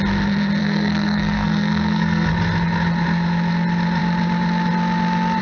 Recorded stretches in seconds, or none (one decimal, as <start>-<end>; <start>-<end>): 0.0-0.6; 2.3-5.4